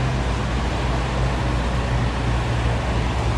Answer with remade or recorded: recorded